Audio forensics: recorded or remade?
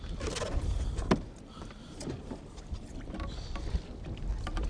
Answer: recorded